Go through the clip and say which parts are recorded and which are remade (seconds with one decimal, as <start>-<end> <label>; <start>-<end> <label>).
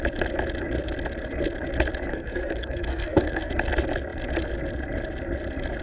0.0-2.1 recorded; 2.1-3.5 remade; 3.5-5.8 recorded